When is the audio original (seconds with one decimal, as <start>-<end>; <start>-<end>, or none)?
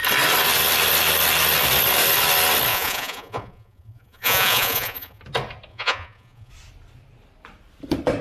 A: 0.0-2.7; 5.2-5.7; 6.5-8.2